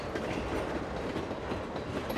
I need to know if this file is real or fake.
real